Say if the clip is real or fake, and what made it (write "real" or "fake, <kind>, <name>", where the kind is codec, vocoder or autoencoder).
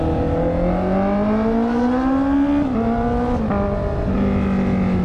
real